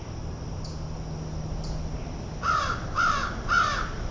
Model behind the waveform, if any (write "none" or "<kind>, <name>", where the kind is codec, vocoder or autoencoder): none